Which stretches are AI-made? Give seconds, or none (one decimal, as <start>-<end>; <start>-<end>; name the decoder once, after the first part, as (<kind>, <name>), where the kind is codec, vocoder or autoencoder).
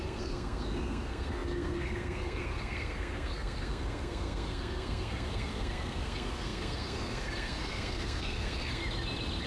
0.0-8.8 (codec, SNAC)